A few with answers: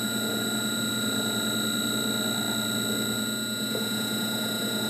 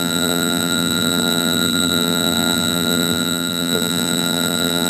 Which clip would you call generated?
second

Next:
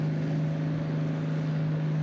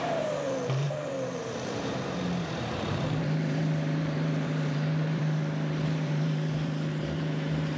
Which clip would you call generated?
second